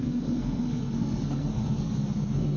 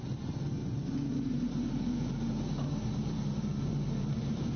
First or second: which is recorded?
second